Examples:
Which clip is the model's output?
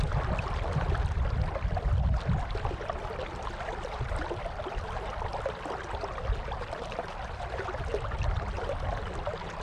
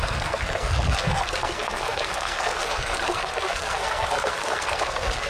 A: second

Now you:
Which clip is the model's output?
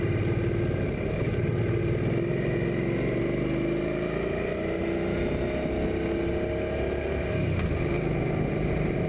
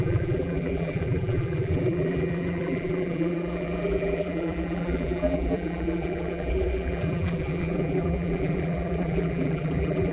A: second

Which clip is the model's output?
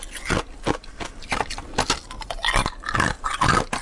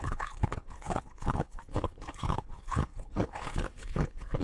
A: second